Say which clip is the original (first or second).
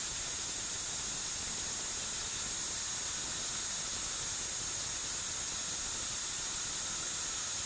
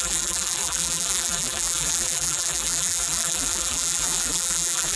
first